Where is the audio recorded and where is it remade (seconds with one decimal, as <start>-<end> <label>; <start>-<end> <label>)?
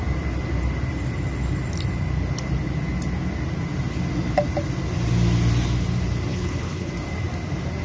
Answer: 0.0-6.3 recorded; 6.3-6.9 remade; 6.9-7.8 recorded